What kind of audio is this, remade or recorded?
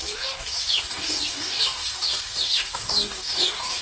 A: remade